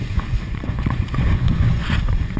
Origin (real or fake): fake